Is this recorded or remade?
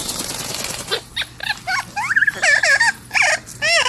recorded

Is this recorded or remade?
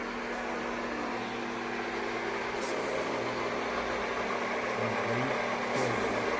recorded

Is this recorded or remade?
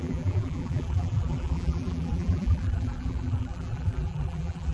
remade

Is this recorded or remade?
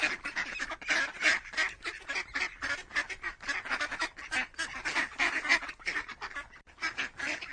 recorded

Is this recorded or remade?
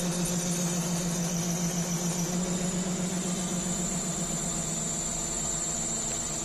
recorded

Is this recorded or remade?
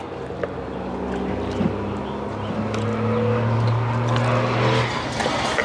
recorded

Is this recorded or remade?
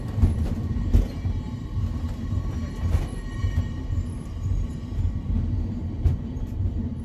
remade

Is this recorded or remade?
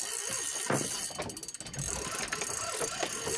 recorded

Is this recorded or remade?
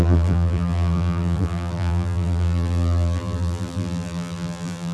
remade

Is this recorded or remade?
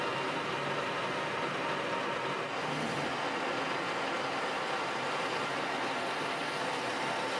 recorded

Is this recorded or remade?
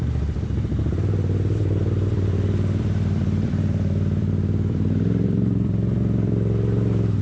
remade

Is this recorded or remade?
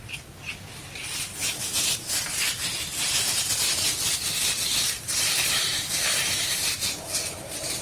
remade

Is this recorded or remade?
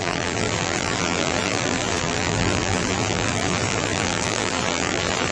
remade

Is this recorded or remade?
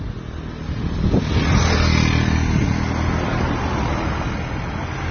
recorded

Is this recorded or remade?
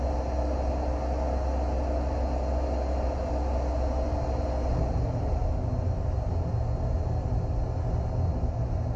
recorded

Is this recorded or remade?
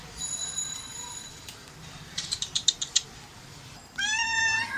remade